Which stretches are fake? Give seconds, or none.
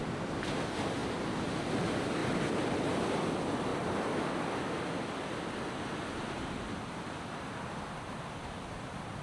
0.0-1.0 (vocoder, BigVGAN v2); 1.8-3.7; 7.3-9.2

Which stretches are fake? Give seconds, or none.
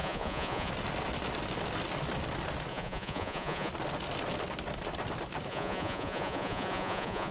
0.0-0.7 (vocoder, Vocos); 2.7-3.7; 5.5-7.3